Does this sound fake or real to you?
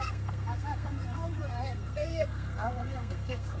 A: fake